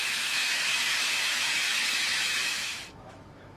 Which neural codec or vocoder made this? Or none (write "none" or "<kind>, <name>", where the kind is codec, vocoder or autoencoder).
autoencoder, DAC-VAE